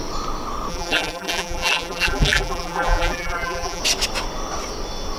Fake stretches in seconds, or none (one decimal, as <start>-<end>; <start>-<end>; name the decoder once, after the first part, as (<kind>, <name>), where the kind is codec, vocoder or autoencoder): 0.7-3.8 (vocoder, BigVGAN v2)